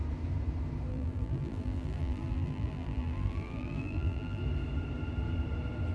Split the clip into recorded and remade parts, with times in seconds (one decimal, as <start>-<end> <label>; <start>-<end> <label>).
0.0-0.9 recorded; 0.9-4.4 remade; 4.4-5.9 recorded